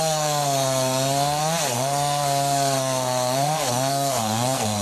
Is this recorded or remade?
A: remade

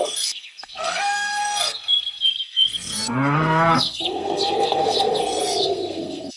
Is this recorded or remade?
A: remade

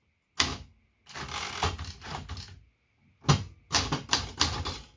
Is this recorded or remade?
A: recorded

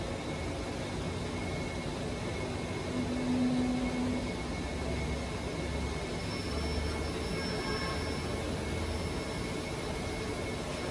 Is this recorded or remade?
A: recorded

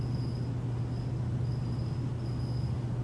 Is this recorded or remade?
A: recorded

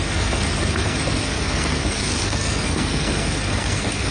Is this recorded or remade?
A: remade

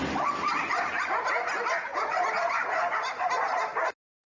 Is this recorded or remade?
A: recorded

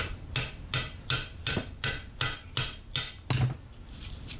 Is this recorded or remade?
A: recorded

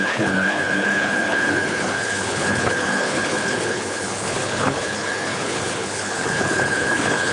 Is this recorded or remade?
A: remade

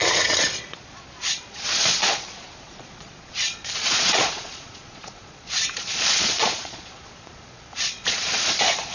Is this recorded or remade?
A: remade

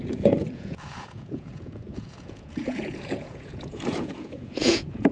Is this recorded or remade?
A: remade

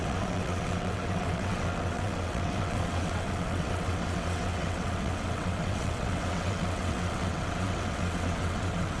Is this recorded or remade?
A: remade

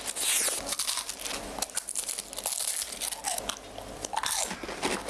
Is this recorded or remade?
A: recorded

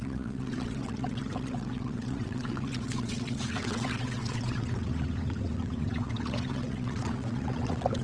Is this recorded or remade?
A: remade